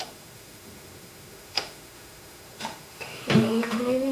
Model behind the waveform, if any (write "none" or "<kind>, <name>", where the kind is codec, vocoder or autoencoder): autoencoder, DAC-VAE